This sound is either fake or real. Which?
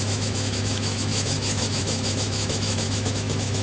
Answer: fake